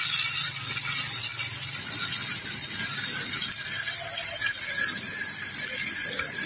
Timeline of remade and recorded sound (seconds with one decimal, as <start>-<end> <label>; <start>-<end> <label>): 0.0-6.5 recorded